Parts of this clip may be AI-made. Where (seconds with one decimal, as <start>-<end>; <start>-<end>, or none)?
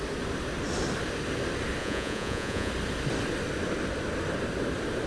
1.8-2.7